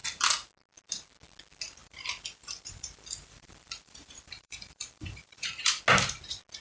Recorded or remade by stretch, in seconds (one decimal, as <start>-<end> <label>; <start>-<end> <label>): 0.0-1.8 recorded; 1.8-5.8 remade; 5.8-6.6 recorded